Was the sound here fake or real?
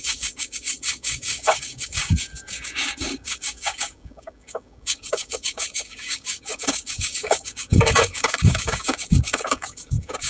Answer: fake